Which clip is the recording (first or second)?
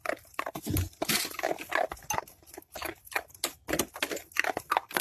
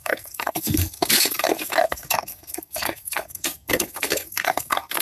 first